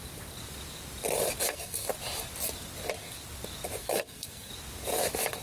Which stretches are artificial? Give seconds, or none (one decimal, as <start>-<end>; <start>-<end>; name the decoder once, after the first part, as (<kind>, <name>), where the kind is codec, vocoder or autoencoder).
1.4-1.9 (codec, SNAC); 3.8-4.5